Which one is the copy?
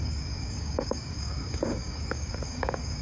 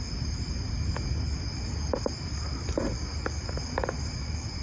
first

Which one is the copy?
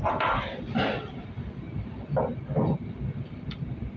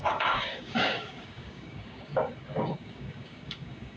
second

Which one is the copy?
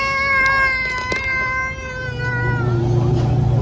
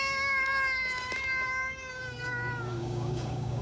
second